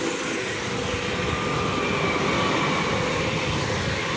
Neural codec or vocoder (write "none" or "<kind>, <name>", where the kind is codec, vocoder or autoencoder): none